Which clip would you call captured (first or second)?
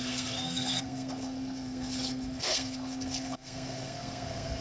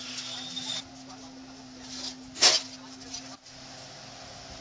second